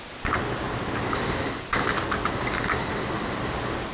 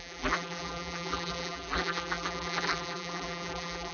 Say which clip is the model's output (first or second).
second